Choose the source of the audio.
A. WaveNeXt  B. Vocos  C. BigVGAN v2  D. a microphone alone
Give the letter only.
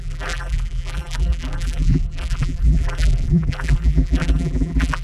C